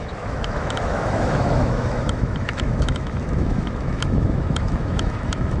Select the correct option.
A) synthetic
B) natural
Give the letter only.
A